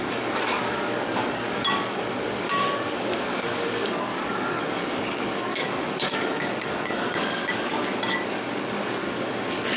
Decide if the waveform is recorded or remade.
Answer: remade